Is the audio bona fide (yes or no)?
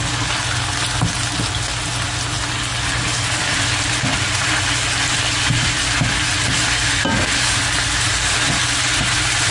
yes